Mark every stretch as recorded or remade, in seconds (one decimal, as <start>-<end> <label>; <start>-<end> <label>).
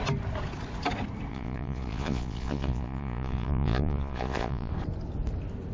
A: 0.0-1.3 recorded; 1.3-4.7 remade; 4.7-5.7 recorded